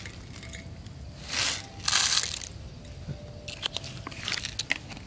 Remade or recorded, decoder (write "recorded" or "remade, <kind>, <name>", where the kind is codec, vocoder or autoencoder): recorded